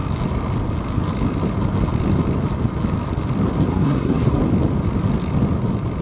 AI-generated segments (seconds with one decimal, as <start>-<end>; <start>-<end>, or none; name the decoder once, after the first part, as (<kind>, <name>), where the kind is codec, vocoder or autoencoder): 3.7-4.4 (codec, SNAC)